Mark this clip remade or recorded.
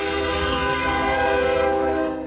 remade